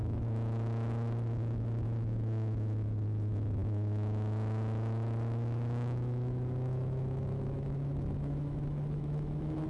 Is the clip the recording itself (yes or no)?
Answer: no